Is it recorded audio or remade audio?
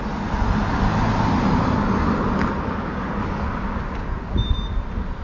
recorded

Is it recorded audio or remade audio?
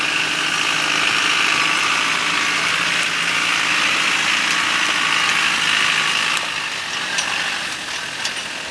recorded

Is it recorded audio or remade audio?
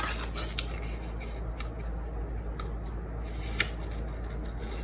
recorded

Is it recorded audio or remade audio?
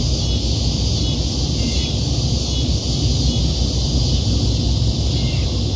recorded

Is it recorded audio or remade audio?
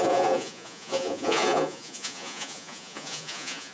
remade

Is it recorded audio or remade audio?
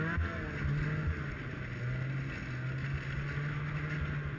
recorded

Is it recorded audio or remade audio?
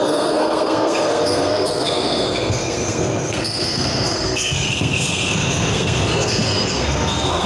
remade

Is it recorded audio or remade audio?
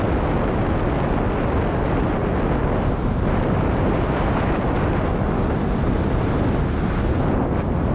recorded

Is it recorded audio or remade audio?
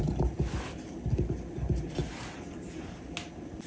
recorded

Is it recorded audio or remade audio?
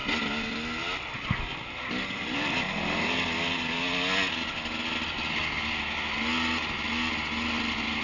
recorded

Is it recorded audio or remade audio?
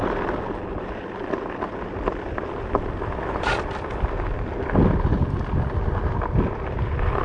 recorded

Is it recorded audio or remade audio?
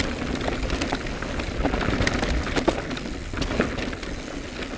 recorded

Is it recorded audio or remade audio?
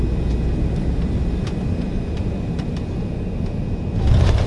recorded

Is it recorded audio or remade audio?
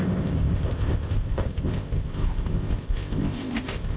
remade